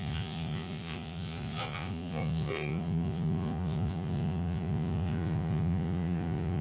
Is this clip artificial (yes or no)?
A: yes